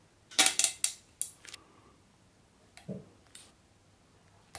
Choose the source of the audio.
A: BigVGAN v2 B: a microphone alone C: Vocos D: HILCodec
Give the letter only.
B